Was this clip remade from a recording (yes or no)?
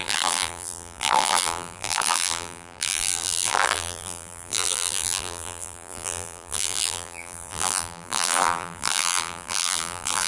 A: yes